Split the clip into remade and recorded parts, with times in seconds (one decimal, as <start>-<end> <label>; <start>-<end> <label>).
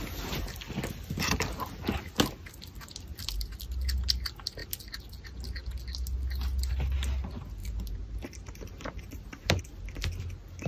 0.0-7.6 recorded; 7.6-9.6 remade; 9.6-10.7 recorded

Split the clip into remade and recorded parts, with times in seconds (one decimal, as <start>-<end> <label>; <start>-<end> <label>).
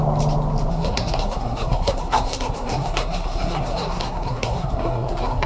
0.0-0.7 recorded; 0.7-5.5 remade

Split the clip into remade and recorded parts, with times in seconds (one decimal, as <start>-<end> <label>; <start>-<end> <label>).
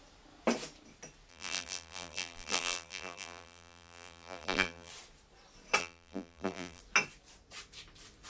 0.0-1.3 recorded; 1.3-4.9 remade; 4.9-5.8 recorded; 5.8-6.8 remade; 6.8-8.3 recorded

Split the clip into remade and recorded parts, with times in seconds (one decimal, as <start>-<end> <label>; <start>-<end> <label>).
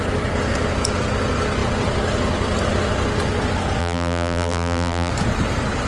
0.0-3.8 recorded; 3.8-5.1 remade; 5.1-5.9 recorded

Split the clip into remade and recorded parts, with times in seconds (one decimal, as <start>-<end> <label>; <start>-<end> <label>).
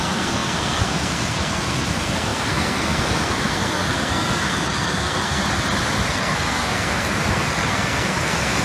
0.0-5.4 remade; 5.4-6.1 recorded; 6.1-8.6 remade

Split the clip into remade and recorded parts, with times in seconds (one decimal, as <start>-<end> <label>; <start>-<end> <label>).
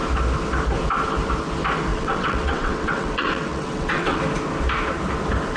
0.0-1.9 recorded; 1.9-4.2 remade; 4.2-5.6 recorded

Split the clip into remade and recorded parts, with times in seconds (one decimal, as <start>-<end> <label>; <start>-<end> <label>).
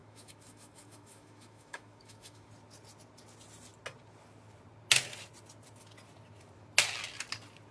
0.0-2.5 remade; 2.5-7.7 recorded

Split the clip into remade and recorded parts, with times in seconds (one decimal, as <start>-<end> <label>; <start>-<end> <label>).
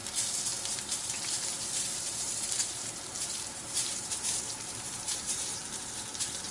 0.0-0.7 recorded; 0.7-6.5 remade